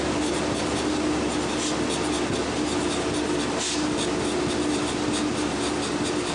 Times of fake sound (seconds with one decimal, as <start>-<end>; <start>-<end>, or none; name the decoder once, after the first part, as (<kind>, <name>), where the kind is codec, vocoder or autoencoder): none